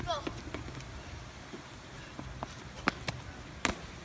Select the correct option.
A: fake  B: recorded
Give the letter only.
B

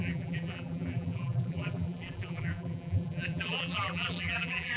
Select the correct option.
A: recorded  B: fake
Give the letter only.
B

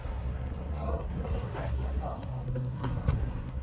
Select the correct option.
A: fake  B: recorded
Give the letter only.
A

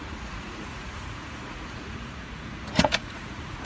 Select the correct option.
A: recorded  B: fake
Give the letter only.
B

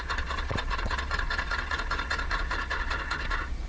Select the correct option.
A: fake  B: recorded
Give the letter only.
A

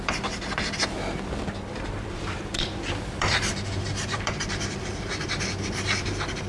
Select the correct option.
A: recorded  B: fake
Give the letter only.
B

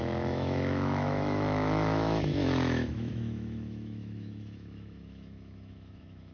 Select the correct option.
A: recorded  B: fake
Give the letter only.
B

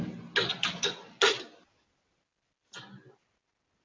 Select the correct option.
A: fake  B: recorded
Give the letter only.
B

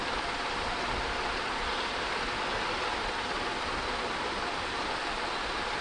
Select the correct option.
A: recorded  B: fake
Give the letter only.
A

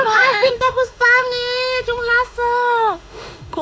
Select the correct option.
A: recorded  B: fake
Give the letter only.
B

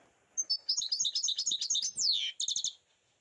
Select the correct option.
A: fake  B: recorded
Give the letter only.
B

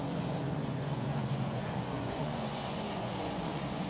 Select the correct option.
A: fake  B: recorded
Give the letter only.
A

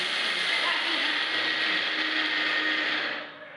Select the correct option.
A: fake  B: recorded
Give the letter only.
B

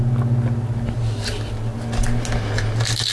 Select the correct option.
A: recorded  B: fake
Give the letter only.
A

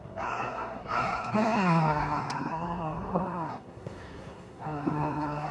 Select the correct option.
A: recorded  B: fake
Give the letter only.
B